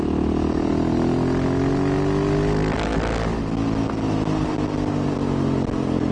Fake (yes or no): no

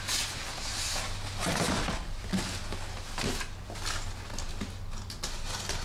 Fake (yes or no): no